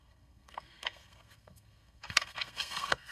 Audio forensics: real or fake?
fake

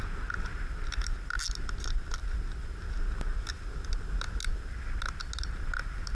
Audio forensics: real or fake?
real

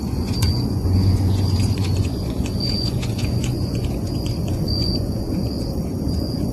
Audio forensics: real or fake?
fake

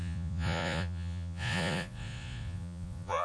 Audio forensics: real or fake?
fake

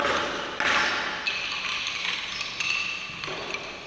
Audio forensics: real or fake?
real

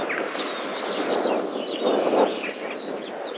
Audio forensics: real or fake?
real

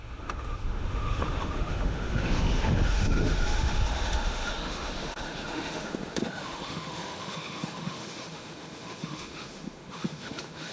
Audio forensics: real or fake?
fake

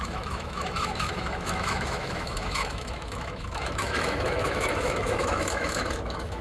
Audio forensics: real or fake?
fake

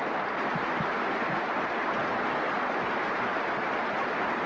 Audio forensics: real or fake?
real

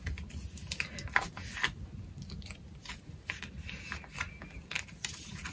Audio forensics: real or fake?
real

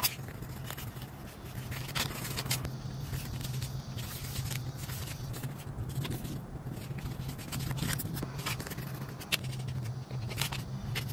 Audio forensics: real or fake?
real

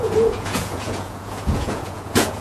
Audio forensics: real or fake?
fake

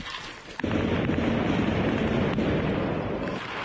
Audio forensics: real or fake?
real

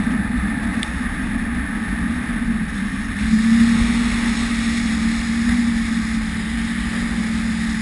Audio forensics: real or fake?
real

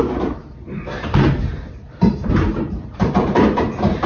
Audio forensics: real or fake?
fake